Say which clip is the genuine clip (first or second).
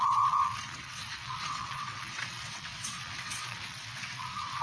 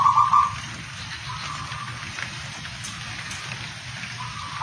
second